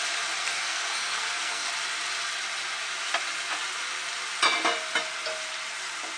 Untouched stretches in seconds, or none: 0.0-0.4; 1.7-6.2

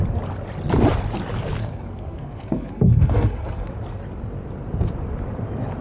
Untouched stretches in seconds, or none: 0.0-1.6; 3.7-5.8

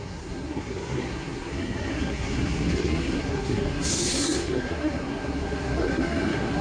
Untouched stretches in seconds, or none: none

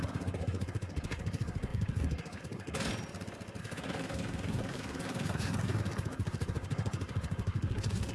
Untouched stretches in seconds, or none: 2.9-3.6

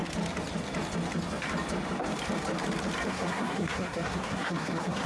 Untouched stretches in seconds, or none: 0.0-3.1

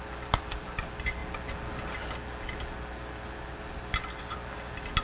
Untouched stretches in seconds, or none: 0.0-5.0

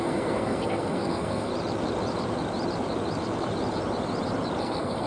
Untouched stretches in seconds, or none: 1.5-4.6